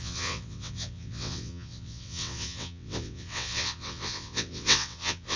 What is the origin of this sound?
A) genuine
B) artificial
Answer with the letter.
B